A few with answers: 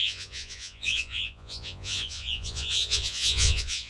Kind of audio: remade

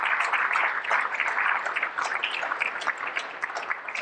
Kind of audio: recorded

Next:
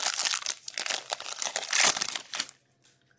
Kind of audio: recorded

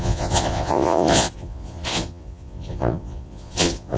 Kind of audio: remade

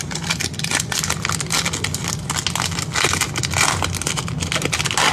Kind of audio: recorded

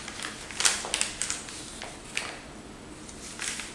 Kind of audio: recorded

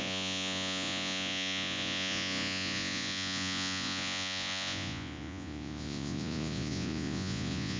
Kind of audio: remade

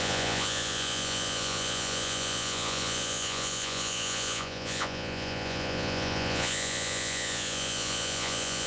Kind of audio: remade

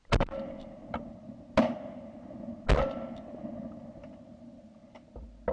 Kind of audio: recorded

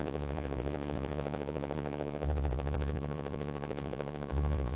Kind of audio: remade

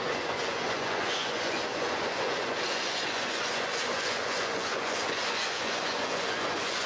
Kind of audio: remade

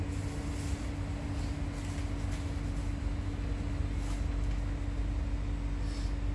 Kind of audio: recorded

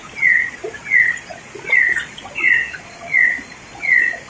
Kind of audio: remade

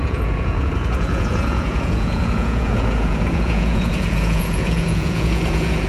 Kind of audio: remade